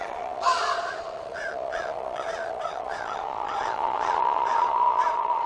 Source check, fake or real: fake